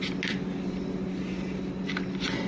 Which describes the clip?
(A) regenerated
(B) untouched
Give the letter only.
B